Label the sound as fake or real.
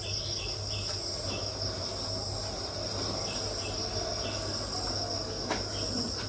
real